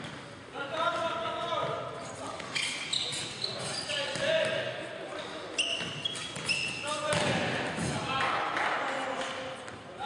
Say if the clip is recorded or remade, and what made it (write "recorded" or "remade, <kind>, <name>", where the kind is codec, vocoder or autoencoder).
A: recorded